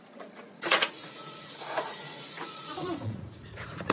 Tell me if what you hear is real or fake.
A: fake